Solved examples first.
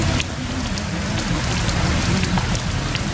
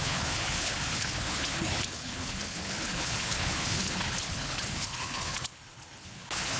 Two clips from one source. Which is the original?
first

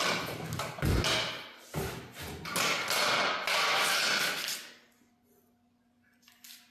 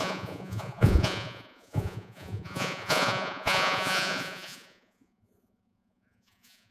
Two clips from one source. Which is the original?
first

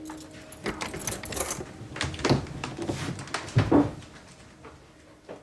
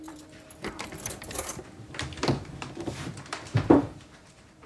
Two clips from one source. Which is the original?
first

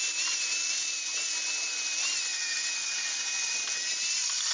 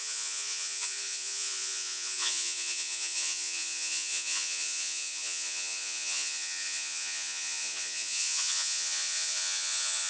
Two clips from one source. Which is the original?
first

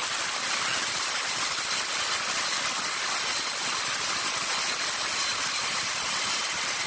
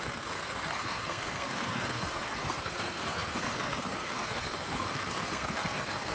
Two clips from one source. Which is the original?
first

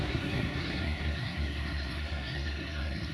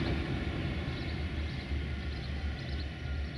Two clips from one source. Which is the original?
second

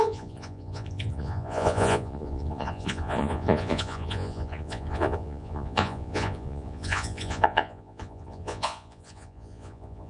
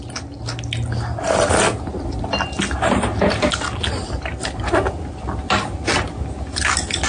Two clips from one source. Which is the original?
second